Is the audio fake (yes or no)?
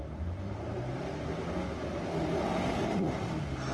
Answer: no